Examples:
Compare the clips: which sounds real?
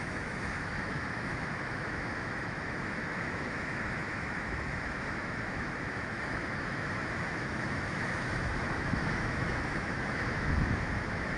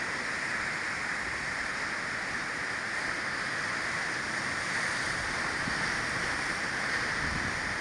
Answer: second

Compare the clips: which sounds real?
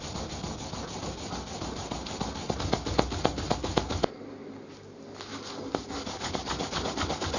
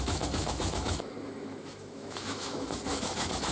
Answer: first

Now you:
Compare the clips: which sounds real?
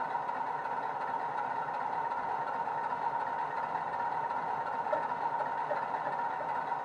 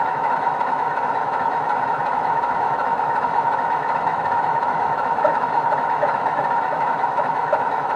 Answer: first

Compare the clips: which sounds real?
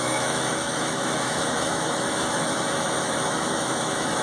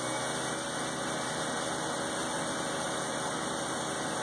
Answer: second